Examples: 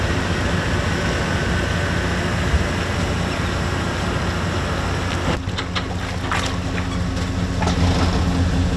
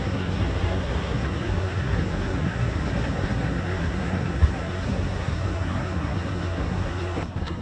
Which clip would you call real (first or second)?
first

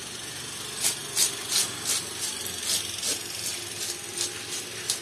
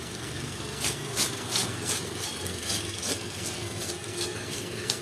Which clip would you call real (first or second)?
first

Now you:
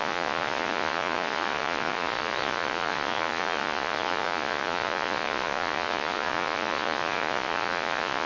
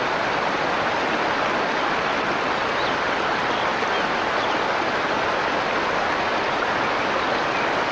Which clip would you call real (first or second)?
second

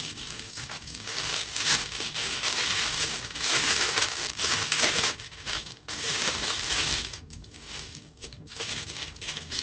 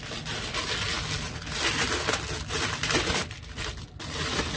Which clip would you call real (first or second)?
second